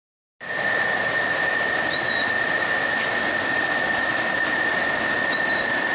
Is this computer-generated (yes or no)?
no